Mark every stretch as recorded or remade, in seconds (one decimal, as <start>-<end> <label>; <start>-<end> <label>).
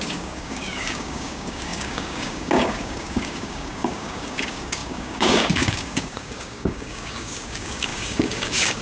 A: 0.0-8.8 remade